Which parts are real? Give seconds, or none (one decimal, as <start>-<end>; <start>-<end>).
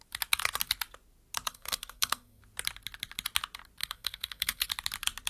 0.0-1.5; 2.4-3.8; 4.7-5.3